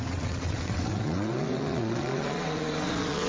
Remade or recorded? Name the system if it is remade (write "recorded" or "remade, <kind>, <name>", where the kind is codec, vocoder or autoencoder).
remade, vocoder, WaveNeXt